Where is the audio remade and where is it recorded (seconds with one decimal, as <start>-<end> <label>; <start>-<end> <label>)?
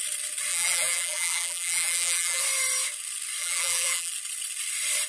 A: 0.0-0.5 recorded; 0.5-2.4 remade; 2.4-3.4 recorded; 3.4-4.1 remade; 4.1-5.1 recorded